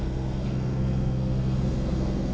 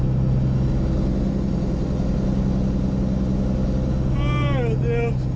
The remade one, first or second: first